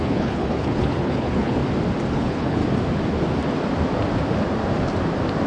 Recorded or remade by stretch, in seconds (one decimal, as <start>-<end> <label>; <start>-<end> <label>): 0.0-1.6 remade; 1.6-2.1 recorded; 2.1-2.6 remade; 2.6-5.5 recorded

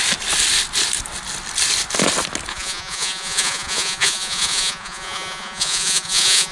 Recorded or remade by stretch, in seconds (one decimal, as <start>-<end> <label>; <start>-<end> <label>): 0.0-2.5 recorded; 2.5-6.5 remade

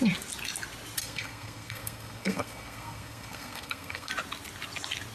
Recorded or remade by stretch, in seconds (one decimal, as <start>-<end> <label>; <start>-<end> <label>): 0.0-1.0 recorded; 1.0-4.1 remade; 4.1-5.1 recorded

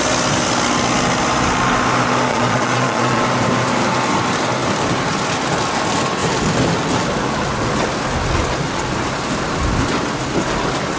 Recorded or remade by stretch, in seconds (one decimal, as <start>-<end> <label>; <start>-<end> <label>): 0.0-2.3 recorded; 2.3-3.2 remade; 3.2-11.0 recorded